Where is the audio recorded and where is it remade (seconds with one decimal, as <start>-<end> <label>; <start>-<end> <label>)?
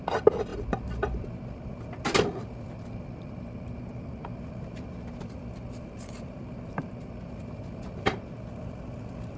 0.0-9.4 recorded